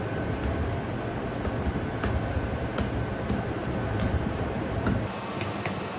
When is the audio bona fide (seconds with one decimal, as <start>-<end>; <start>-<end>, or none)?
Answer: 0.0-3.6; 4.9-6.0